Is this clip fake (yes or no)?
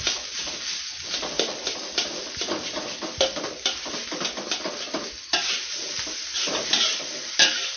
no